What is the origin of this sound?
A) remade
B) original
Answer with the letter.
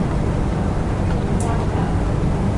B